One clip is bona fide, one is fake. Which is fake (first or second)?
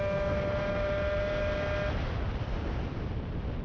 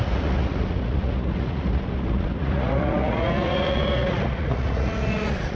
second